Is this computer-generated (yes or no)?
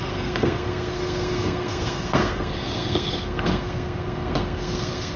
yes